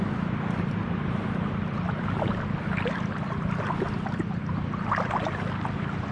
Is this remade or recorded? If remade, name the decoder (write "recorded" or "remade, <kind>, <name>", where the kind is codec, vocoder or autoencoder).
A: recorded